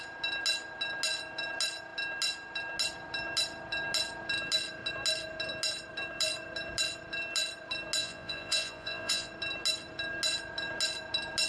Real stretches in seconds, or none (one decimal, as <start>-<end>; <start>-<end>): 0.0-8.0; 9.3-11.5